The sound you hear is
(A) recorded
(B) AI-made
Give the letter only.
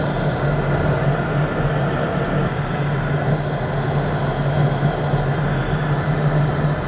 A